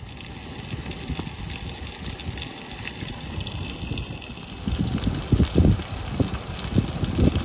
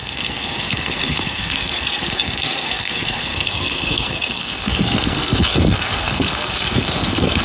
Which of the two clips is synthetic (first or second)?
second